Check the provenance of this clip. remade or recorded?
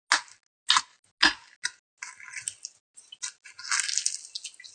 recorded